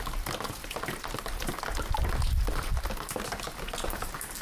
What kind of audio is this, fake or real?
real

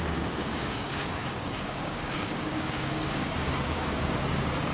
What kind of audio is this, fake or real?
fake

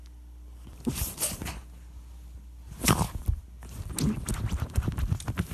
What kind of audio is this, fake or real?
real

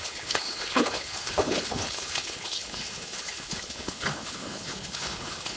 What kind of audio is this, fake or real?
fake